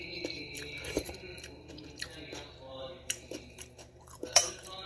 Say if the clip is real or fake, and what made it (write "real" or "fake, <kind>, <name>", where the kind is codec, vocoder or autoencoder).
fake, vocoder, BigVGAN v2